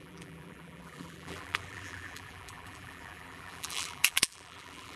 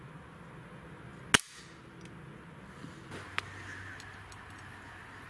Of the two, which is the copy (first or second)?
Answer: first